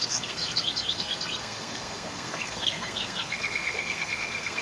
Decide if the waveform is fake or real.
fake